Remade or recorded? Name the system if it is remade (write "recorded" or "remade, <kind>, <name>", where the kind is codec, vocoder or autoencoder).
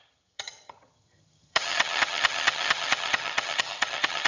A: remade, vocoder, HiFi-GAN